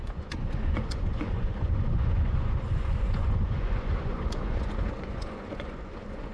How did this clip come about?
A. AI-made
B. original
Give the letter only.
A